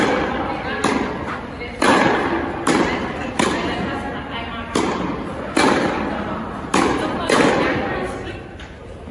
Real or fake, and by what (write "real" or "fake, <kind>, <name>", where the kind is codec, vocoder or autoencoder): real